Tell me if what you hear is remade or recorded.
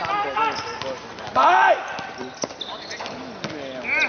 recorded